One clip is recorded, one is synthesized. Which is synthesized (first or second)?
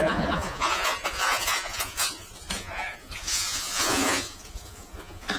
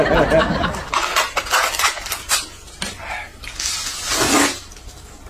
first